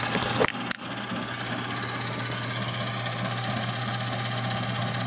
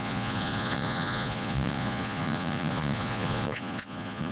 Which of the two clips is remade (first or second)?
second